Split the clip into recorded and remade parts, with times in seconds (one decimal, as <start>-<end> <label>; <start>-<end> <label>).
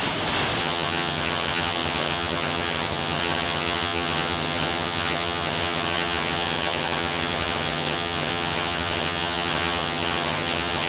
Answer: 0.0-0.6 recorded; 0.6-10.9 remade